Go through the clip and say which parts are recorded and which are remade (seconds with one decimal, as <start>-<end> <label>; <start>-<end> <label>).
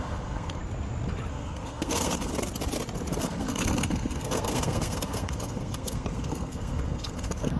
0.0-0.6 remade; 0.6-1.3 recorded; 1.3-2.3 remade; 2.3-3.2 recorded; 3.2-7.6 remade